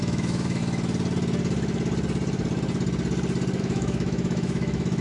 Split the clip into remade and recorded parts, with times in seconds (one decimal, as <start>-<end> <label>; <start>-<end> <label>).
0.0-0.6 remade; 0.6-3.6 recorded; 3.6-5.0 remade